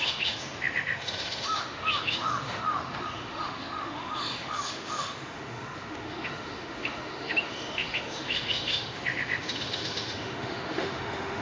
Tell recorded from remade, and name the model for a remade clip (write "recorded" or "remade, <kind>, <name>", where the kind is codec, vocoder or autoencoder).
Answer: remade, autoencoder, DAC-VAE